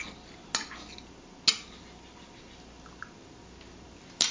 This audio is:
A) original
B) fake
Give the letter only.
A